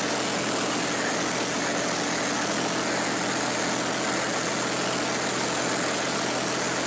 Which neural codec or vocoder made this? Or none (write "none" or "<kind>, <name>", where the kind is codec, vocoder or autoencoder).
none